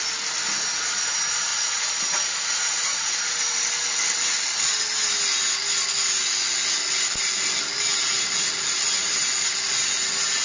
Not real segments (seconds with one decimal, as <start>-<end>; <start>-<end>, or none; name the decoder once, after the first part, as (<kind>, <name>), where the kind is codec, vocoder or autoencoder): 1.5-3.2 (vocoder, Vocos)